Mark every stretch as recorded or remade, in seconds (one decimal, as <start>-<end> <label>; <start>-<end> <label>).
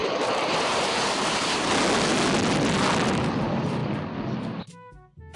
0.0-1.7 remade; 1.7-5.4 recorded